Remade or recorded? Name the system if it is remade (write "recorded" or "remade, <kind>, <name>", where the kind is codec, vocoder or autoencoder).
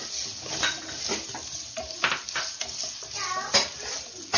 recorded